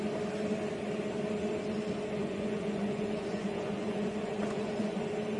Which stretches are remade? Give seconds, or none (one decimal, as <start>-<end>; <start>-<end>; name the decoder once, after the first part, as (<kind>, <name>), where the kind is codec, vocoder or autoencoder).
2.2-5.0 (vocoder, Vocos)